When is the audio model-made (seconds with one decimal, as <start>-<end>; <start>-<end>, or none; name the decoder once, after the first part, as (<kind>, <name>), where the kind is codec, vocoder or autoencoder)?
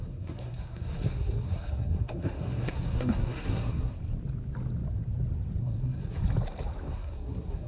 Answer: 0.0-4.0 (codec, SNAC); 5.6-6.2; 6.9-7.7